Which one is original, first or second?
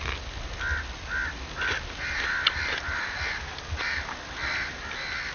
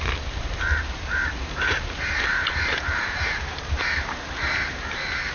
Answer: first